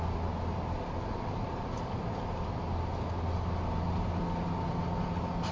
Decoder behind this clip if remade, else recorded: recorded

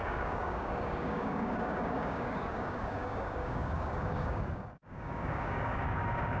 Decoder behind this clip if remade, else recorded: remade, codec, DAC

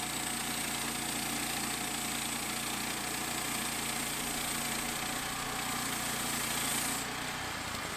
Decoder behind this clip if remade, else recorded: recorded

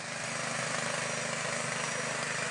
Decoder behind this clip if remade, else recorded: recorded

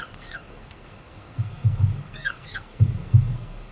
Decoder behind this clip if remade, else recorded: remade, codec, SNAC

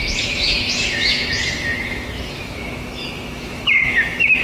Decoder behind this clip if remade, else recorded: remade, autoencoder, DAC-VAE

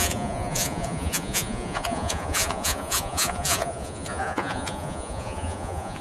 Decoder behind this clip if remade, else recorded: remade, vocoder, Vocos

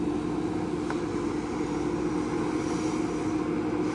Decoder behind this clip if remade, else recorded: recorded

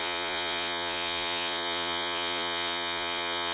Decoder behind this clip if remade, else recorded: remade, vocoder, Vocos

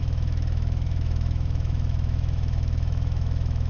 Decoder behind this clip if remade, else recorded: remade, autoencoder, DAC-VAE